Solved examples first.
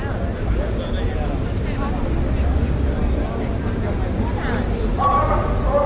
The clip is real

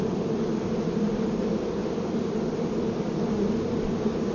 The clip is real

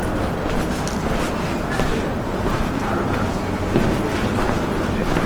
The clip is real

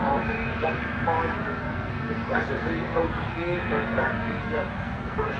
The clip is fake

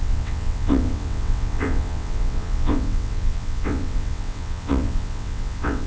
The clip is fake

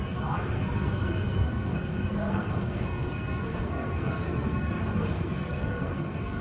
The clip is fake